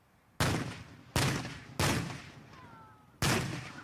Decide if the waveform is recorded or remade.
recorded